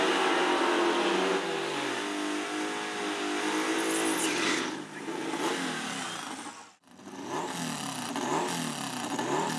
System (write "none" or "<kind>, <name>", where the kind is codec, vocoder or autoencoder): none